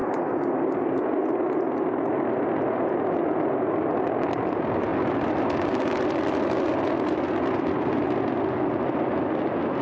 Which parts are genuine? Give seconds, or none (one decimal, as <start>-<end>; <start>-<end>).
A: 0.0-9.8